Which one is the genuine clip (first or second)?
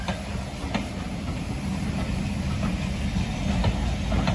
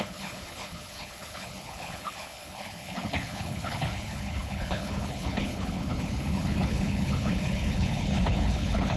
first